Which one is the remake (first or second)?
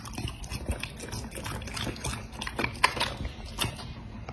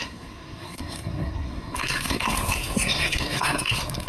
second